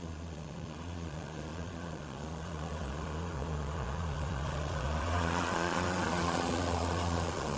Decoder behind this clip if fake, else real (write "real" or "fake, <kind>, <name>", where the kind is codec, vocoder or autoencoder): fake, vocoder, Vocos